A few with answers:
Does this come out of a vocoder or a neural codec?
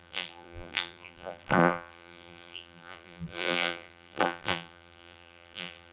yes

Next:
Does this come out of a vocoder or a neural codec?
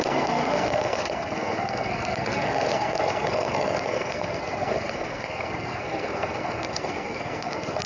yes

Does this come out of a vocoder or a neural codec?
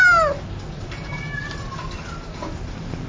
no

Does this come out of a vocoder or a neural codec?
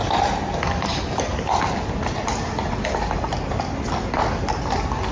no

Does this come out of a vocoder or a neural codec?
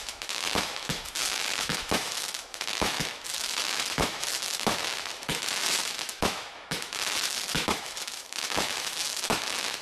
yes